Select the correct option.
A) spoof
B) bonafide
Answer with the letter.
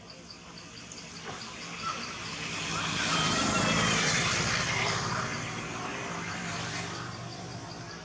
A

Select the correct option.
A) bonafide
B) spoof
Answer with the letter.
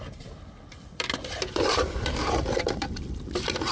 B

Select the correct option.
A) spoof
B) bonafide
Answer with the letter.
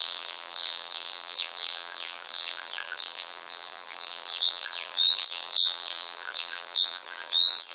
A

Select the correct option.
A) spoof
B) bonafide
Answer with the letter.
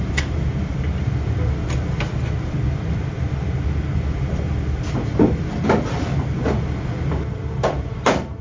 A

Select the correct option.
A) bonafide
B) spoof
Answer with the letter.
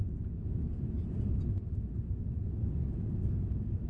A